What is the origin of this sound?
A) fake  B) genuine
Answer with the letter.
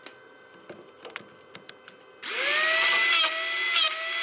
B